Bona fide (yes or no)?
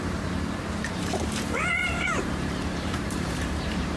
no